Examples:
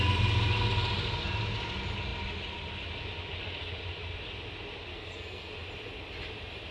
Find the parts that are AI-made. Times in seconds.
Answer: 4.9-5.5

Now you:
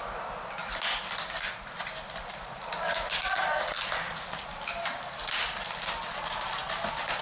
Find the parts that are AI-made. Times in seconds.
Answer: none

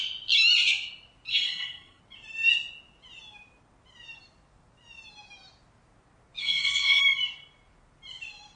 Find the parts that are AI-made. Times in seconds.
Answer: 1.3-2.0; 6.4-7.0

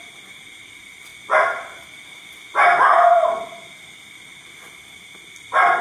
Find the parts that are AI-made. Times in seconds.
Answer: none

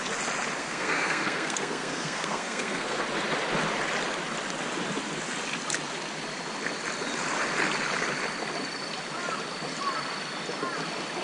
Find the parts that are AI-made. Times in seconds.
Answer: 0.6-3.0

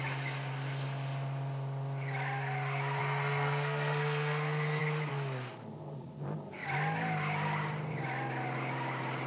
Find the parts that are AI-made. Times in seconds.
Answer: 3.0-4.8